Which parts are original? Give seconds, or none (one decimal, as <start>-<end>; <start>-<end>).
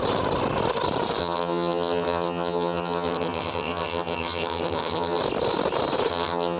0.0-1.2; 5.2-6.1